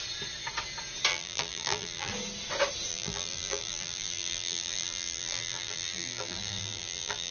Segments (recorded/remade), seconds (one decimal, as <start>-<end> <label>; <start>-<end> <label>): 0.0-1.1 recorded; 1.1-2.1 remade; 2.1-2.9 recorded; 2.9-7.3 remade